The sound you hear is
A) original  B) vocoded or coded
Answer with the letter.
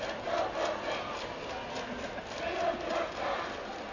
A